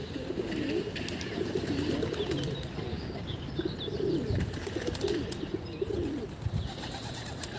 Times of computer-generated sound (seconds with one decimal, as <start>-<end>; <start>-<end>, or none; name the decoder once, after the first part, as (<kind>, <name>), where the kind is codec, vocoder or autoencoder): 0.0-0.5 (codec, DAC); 2.9-3.5